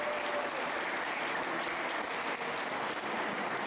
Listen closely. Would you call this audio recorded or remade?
recorded